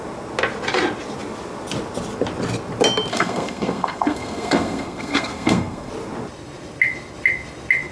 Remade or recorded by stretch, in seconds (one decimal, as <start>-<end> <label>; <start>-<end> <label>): 0.0-3.1 recorded; 3.1-5.9 remade; 5.9-7.9 recorded